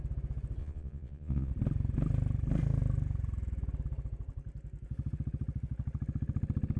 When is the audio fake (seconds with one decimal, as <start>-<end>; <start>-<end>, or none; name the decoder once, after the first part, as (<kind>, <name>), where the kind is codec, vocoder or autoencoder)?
0.6-1.5 (vocoder, Vocos)